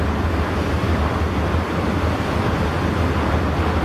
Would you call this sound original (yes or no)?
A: yes